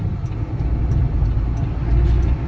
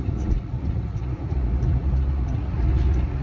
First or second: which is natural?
first